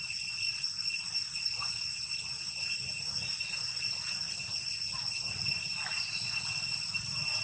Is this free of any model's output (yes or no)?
yes